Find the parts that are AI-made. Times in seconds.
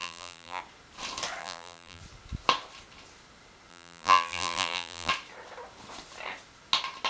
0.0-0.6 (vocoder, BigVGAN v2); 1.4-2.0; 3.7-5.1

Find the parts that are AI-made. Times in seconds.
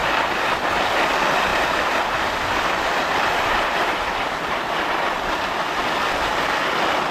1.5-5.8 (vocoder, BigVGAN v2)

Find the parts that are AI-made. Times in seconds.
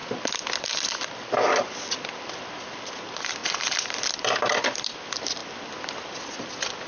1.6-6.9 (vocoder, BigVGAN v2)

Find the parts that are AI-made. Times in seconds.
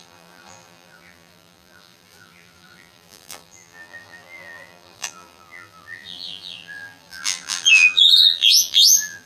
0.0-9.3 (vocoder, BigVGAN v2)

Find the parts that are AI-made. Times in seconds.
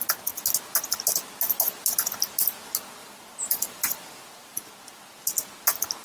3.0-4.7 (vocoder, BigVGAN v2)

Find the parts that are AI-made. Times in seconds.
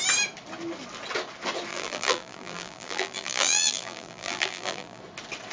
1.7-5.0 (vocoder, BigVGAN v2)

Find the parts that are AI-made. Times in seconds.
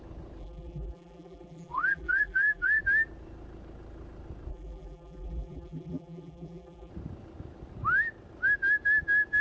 0.4-2.8 (vocoder, BigVGAN v2); 4.5-6.9